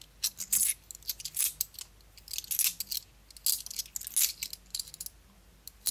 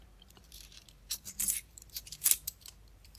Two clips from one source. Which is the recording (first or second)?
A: first